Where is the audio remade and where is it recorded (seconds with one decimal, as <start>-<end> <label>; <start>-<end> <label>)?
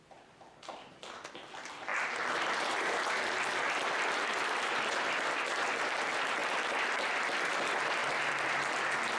0.0-9.2 recorded